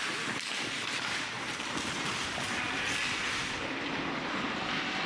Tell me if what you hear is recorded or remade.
recorded